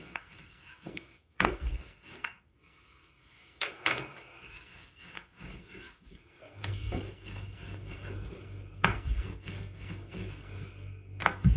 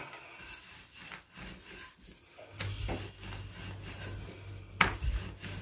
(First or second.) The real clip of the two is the second